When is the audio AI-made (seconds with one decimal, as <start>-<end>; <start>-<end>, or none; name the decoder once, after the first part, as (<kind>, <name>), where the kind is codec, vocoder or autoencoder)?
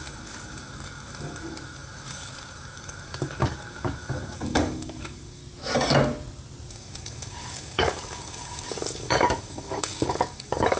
0.0-5.4 (codec, DAC); 6.7-10.8